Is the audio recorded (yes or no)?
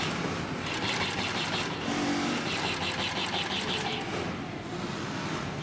yes